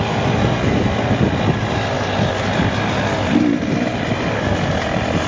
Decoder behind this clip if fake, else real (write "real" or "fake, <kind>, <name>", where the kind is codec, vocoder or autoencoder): real